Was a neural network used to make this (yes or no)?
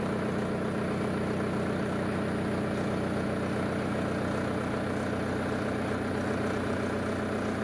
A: no